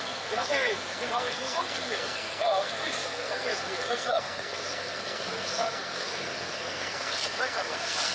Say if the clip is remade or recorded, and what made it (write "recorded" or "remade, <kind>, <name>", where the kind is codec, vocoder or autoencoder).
remade, codec, SNAC